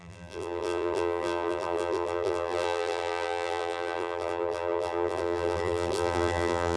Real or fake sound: fake